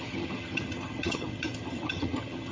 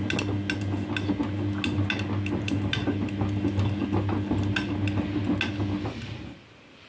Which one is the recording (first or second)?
second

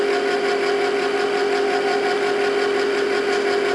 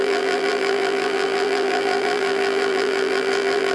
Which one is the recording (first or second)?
first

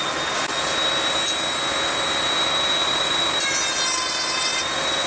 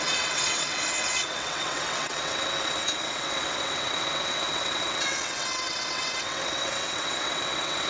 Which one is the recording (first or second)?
first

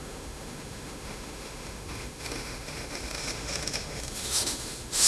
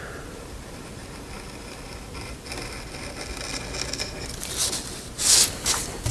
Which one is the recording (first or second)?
second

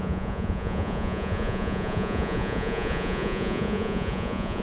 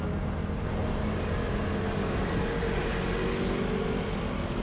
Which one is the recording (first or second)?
second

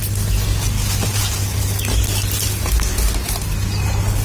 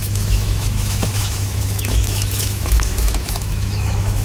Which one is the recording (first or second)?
first